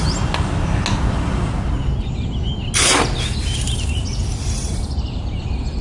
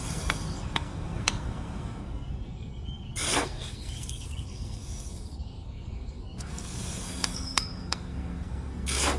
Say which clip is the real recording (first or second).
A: first